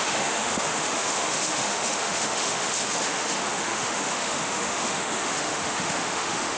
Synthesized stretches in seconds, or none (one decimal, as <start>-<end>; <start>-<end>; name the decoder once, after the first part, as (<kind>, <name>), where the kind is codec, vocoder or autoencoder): 0.0-6.6 (autoencoder, DAC-VAE)